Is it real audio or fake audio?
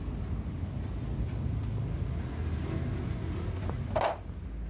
real